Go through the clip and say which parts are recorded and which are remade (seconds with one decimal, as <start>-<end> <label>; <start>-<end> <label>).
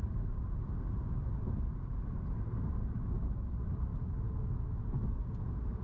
0.0-2.8 recorded; 2.8-3.5 remade; 3.5-3.9 recorded; 3.9-5.2 remade; 5.2-5.8 recorded